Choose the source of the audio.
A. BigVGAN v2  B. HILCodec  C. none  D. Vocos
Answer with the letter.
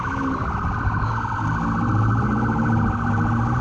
C